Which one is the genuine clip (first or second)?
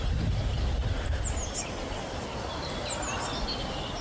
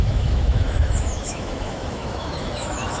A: first